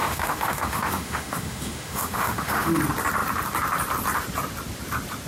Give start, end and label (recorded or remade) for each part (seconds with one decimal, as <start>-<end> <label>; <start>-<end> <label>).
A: 0.0-2.8 remade; 2.8-5.3 recorded